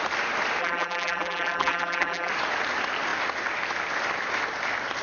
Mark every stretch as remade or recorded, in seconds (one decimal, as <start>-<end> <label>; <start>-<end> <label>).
0.0-0.6 recorded; 0.6-2.3 remade; 2.3-5.0 recorded

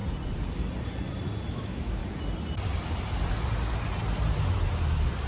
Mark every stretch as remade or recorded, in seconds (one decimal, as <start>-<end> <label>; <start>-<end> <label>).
0.0-1.5 recorded; 1.5-2.0 remade; 2.0-5.3 recorded